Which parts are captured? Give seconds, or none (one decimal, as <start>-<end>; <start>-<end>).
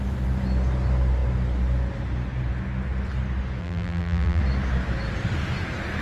0.0-3.6; 4.4-6.0